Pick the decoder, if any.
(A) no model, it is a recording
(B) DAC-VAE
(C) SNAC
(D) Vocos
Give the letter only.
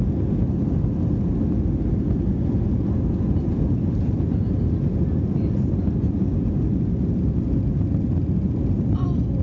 A